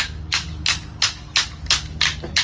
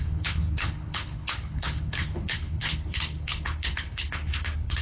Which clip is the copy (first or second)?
second